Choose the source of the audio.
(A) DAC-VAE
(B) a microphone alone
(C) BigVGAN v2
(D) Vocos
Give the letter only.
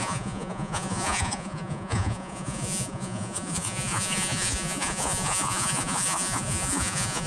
D